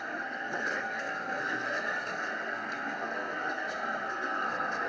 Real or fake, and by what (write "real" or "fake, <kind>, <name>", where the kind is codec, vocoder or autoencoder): fake, codec, SNAC